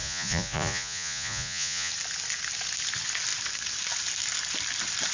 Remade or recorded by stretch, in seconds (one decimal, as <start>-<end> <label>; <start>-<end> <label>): 0.0-1.9 remade; 1.9-5.1 recorded